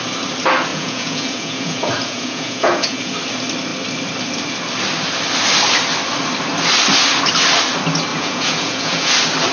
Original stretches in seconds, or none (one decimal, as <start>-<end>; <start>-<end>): 0.0-0.7; 3.1-8.1; 9.1-9.5